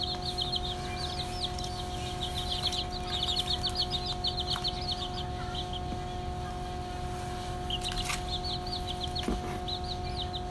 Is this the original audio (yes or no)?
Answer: yes